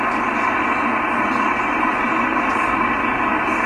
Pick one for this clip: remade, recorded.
recorded